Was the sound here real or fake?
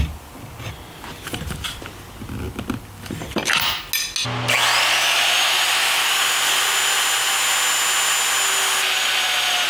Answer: real